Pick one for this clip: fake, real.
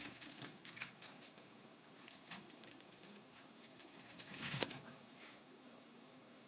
fake